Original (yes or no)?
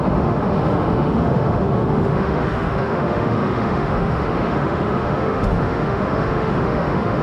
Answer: no